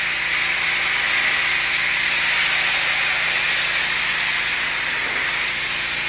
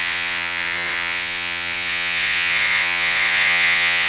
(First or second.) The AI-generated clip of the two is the second